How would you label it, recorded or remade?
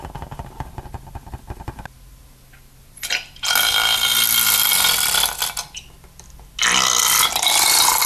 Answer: recorded